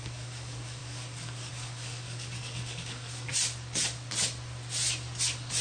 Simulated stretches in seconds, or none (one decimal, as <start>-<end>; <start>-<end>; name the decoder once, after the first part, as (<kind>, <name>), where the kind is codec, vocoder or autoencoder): 0.0-3.3 (codec, DAC)